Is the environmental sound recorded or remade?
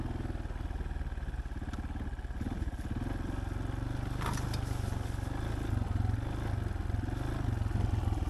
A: recorded